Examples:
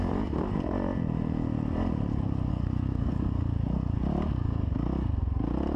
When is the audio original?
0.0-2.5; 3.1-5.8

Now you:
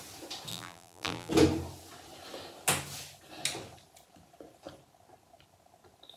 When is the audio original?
0.0-0.5; 1.3-6.2

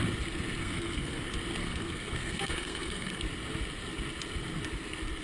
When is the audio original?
0.0-0.6; 1.2-1.6; 3.2-5.2

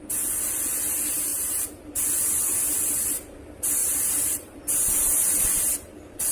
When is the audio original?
0.0-1.3; 1.8-3.8; 4.6-6.3

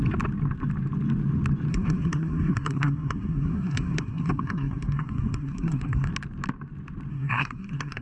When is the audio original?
0.0-1.7; 6.1-7.1

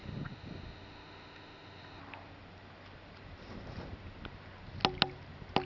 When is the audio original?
2.0-5.7

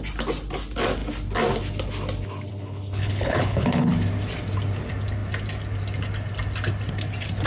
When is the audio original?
0.0-2.5; 3.9-7.5

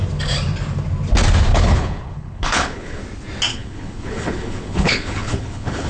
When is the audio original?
0.0-1.5; 3.0-3.5